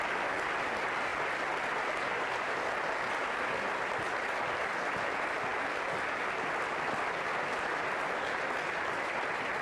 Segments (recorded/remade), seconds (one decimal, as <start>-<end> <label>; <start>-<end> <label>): 0.0-9.6 recorded

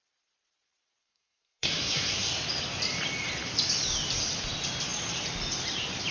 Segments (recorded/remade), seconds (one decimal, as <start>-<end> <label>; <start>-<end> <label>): 0.0-1.0 recorded; 1.0-2.3 remade; 2.3-6.1 recorded

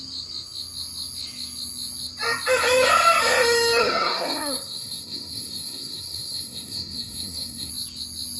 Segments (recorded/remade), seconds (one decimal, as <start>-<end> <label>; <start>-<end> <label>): 0.0-3.8 recorded; 3.8-7.7 remade; 7.7-8.4 recorded

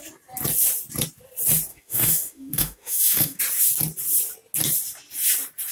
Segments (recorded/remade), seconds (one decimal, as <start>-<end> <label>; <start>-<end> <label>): 0.0-1.7 recorded; 1.7-3.4 remade; 3.4-5.7 recorded

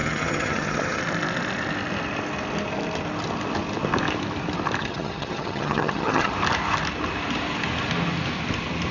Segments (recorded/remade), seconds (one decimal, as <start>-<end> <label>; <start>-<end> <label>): 0.0-1.0 remade; 1.0-4.8 recorded; 4.8-6.3 remade; 6.3-8.9 recorded

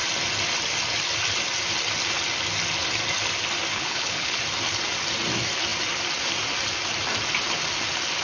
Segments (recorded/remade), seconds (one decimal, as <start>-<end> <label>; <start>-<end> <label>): 0.0-3.7 recorded; 3.7-4.4 remade; 4.4-8.2 recorded

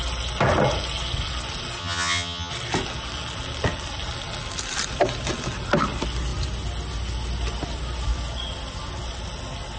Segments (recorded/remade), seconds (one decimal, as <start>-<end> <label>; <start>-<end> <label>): 0.0-1.8 recorded; 1.8-2.5 remade; 2.5-9.8 recorded